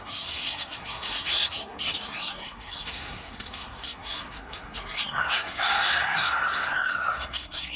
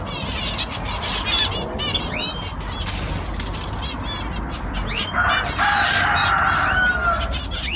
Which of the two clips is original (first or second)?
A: second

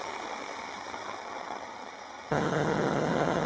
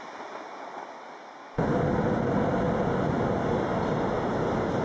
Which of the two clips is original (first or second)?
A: second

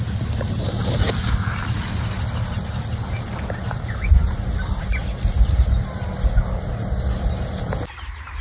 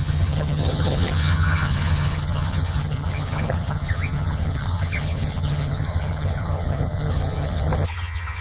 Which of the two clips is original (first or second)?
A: first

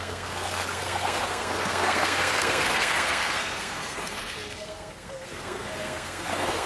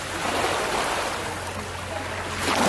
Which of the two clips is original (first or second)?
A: second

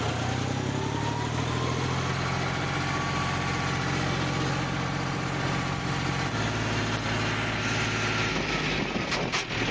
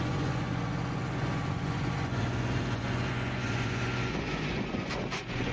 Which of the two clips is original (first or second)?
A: first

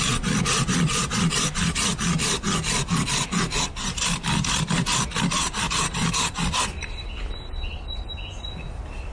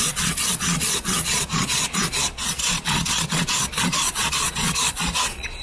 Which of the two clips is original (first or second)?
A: first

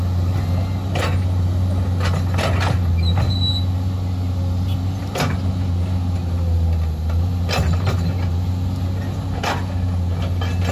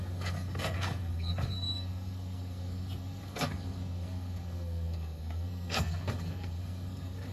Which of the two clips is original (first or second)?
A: first